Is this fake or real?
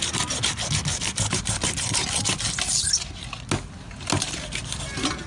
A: real